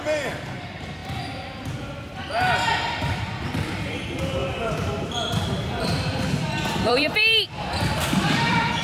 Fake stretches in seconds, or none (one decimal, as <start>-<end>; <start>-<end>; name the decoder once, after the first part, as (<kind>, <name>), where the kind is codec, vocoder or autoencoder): 0.0-1.0 (vocoder, BigVGAN v2); 1.7-8.8